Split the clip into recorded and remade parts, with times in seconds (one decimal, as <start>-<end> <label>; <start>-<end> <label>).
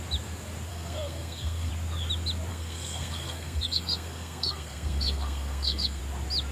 0.0-0.7 recorded; 0.7-1.7 remade; 1.7-2.5 recorded; 2.5-6.0 remade; 6.0-6.5 recorded